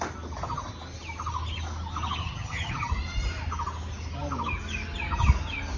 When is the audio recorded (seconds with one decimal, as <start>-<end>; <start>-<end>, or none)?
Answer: 0.0-2.2; 2.9-5.8